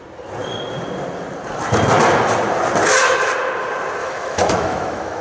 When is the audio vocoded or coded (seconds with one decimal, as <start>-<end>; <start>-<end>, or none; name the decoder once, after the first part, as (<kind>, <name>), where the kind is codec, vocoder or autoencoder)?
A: 4.0-5.2 (autoencoder, DAC-VAE)

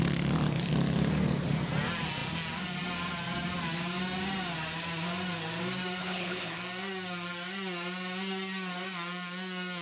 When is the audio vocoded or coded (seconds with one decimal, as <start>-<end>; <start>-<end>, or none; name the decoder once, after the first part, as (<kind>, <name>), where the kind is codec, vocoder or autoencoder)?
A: 6.0-6.6 (codec, HILCodec)